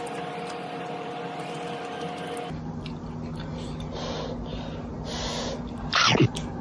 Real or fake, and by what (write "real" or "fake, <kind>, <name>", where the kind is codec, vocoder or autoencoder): real